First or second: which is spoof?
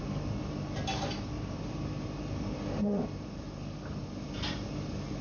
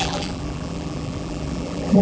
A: second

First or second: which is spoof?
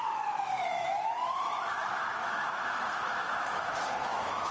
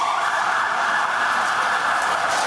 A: first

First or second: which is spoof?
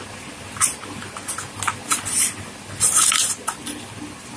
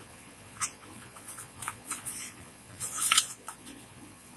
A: second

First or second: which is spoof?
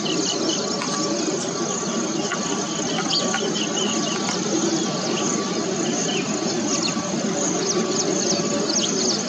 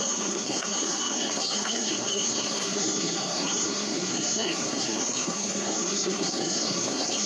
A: second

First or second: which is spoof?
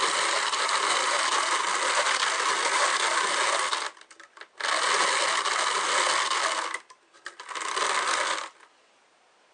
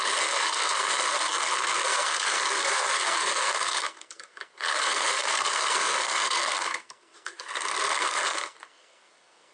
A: second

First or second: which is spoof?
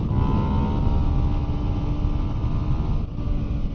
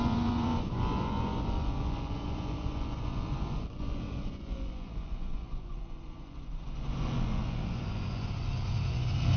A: second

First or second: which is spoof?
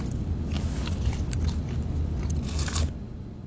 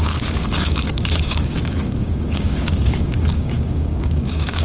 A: second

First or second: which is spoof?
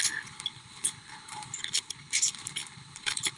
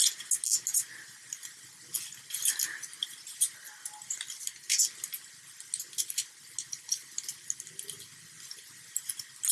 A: first